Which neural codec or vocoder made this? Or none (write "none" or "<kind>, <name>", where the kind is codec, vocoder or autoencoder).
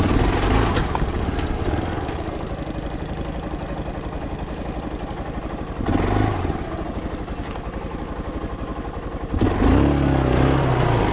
none